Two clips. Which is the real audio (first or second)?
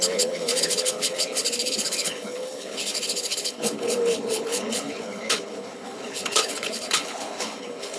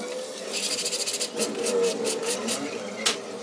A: second